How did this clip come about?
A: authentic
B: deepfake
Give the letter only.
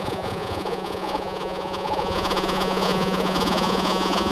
B